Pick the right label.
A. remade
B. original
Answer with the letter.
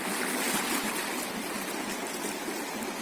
B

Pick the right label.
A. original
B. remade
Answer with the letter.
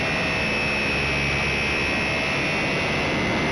A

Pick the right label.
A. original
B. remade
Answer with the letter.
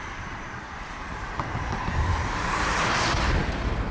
B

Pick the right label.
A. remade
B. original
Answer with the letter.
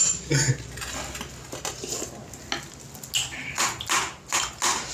B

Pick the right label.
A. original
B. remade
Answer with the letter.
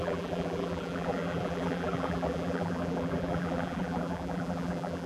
B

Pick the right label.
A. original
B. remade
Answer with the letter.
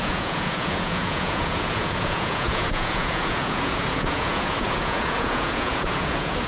B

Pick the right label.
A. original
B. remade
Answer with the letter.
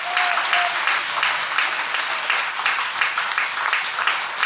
A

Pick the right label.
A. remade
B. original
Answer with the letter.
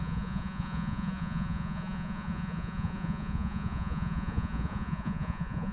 A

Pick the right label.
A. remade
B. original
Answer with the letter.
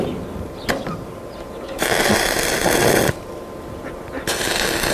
B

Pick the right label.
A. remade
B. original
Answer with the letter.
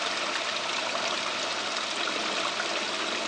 B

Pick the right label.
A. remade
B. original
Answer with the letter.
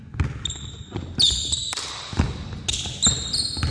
B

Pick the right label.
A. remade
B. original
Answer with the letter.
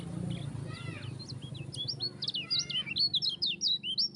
B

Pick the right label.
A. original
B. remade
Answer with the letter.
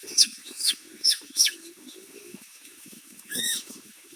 B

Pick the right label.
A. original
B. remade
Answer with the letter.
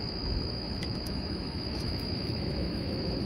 B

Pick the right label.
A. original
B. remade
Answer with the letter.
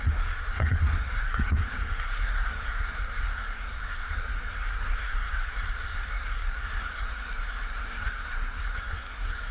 B